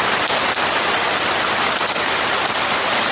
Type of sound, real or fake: fake